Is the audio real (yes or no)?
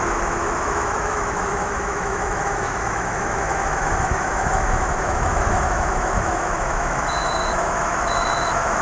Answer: no